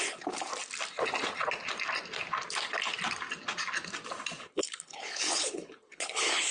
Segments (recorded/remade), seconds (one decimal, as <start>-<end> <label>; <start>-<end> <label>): 0.0-0.5 remade; 0.5-4.4 recorded; 4.4-6.5 remade